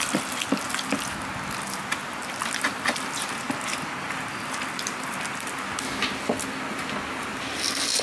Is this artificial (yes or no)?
no